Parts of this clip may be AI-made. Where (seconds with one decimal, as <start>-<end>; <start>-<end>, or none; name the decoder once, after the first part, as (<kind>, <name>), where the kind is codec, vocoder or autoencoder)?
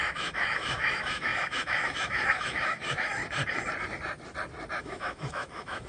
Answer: 0.0-3.2 (autoencoder, DAC-VAE); 4.8-5.9